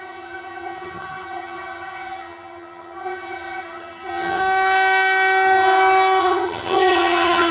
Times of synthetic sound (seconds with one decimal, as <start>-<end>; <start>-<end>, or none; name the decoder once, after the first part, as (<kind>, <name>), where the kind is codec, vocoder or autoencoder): 0.0-4.4 (vocoder, HiFi-GAN); 6.2-7.5